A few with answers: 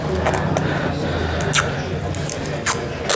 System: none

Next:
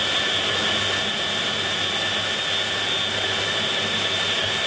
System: none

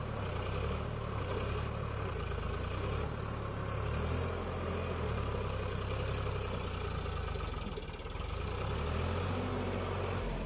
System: none